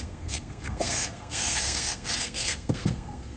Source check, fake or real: fake